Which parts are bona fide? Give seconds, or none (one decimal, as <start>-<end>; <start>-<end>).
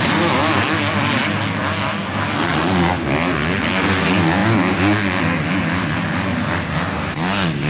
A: 0.0-7.7